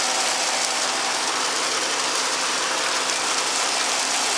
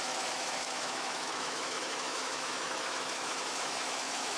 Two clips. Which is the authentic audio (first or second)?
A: first